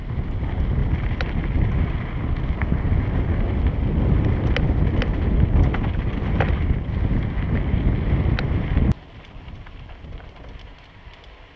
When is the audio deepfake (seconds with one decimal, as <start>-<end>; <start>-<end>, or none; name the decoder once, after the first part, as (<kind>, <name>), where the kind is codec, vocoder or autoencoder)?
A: none